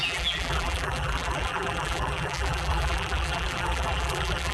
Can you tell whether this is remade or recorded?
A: remade